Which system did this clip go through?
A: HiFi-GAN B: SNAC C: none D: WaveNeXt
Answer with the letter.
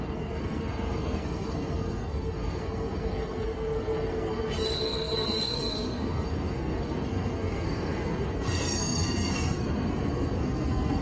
B